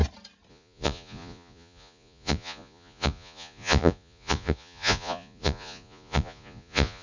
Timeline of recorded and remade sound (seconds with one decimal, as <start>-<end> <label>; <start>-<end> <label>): 0.0-0.5 recorded; 0.5-7.0 remade